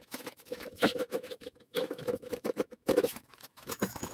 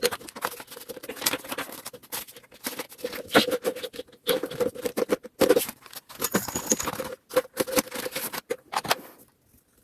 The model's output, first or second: first